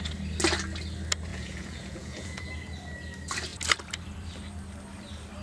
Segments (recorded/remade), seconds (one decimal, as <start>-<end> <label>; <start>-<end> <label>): 0.0-1.3 recorded; 1.3-2.5 remade; 2.5-5.4 recorded